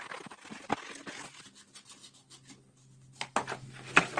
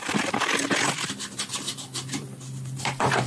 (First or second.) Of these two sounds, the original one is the first